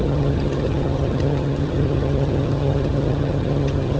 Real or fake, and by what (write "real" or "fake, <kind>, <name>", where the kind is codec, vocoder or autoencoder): fake, vocoder, HiFi-GAN